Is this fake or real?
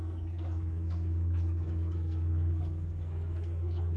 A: fake